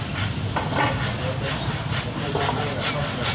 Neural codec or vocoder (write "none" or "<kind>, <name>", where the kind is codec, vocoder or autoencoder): none